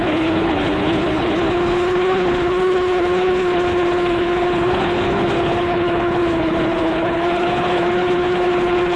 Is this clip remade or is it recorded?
remade